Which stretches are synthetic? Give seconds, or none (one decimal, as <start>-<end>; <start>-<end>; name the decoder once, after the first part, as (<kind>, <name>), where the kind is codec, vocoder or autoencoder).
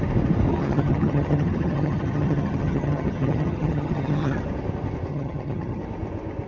0.5-4.4 (vocoder, HiFi-GAN); 5.1-5.8